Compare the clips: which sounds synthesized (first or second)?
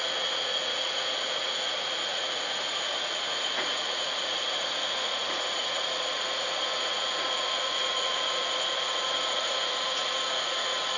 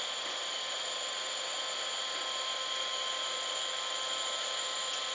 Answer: first